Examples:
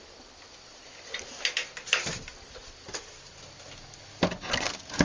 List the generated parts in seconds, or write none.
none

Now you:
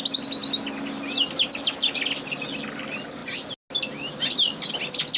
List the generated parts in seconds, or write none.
none

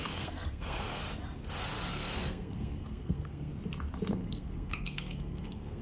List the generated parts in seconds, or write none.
0.0-1.0 (codec, SNAC); 1.9-3.5; 4.1-5.8

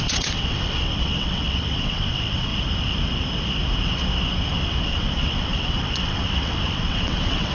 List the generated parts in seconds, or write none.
0.0-2.5 (vocoder, WaveNeXt); 4.8-7.5

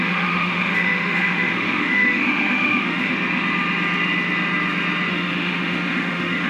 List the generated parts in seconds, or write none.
0.0-3.1 (autoencoder, DAC-VAE); 5.1-6.5

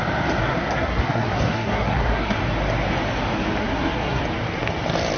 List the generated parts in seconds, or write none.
0.4-2.4 (codec, SNAC); 3.6-4.2